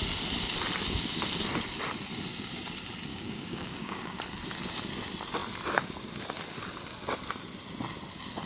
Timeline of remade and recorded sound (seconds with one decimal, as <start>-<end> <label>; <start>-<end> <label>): 0.0-3.1 recorded; 3.1-4.2 remade; 4.2-8.5 recorded